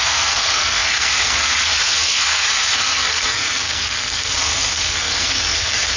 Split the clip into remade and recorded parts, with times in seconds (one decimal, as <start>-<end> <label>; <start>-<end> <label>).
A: 0.0-6.0 remade